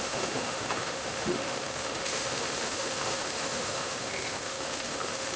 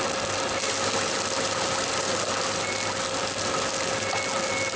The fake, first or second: first